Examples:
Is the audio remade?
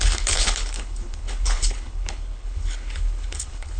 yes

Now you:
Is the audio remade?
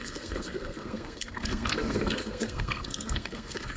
yes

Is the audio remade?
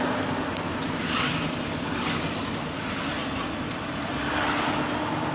no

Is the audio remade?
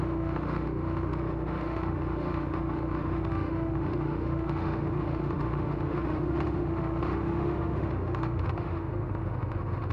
yes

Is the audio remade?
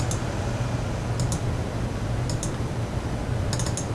no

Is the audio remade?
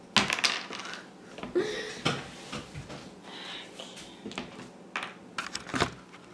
no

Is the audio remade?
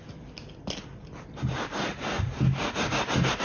no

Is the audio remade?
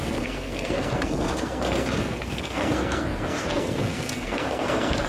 yes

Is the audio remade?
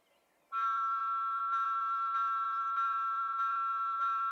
yes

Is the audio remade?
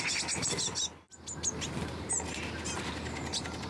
no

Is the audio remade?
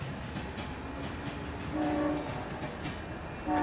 no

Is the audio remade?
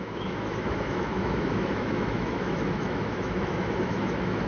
yes